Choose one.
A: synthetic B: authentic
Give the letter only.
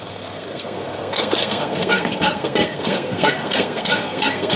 A